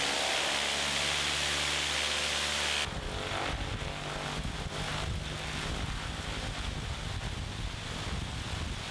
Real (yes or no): yes